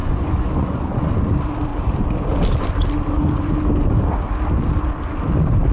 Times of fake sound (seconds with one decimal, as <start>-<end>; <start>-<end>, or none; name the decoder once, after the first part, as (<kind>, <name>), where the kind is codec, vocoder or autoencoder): 0.0-1.1 (vocoder, Vocos)